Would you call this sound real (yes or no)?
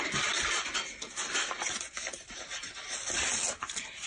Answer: yes